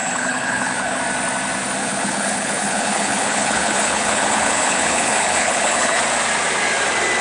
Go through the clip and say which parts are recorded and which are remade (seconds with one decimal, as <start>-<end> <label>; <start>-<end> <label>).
0.0-1.0 remade; 1.0-1.8 recorded; 1.8-6.0 remade; 6.0-7.2 recorded